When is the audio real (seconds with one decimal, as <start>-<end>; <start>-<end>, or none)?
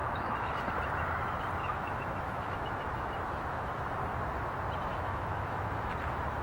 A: 0.7-1.6; 3.8-4.9; 5.9-6.4